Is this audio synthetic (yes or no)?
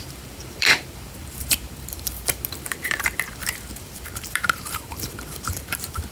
yes